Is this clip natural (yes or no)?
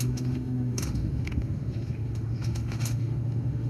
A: no